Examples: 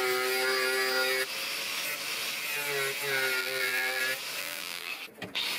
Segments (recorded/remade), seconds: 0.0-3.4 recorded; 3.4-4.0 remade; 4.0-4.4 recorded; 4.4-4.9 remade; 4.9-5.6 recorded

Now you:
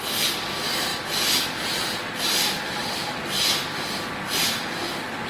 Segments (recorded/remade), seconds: 0.0-5.3 recorded

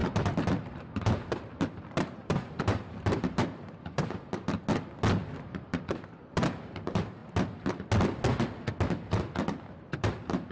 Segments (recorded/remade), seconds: 0.0-0.6 recorded; 0.6-4.3 remade; 4.3-5.3 recorded; 5.3-7.2 remade; 7.2-9.8 recorded; 9.8-10.5 remade

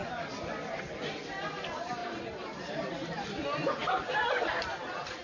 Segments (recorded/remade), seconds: 0.0-1.0 remade; 1.0-3.8 recorded; 3.8-5.2 remade